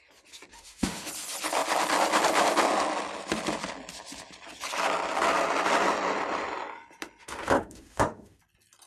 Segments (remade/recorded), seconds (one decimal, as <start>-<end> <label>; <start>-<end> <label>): 0.0-0.5 recorded; 0.5-1.1 remade; 1.1-7.2 recorded; 7.2-8.4 remade; 8.4-8.9 recorded